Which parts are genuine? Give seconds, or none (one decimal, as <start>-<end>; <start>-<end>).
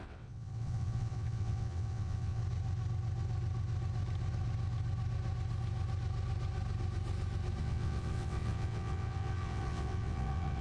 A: 2.4-7.6